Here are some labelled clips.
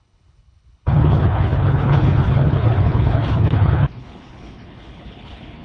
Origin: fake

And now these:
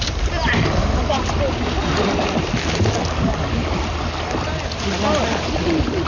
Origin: real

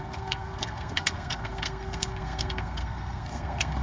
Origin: fake